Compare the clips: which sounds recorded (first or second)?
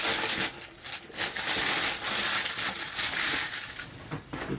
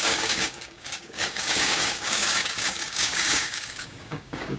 first